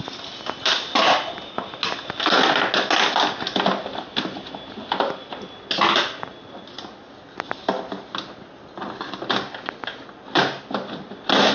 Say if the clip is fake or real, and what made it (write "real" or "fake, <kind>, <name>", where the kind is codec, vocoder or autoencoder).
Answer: real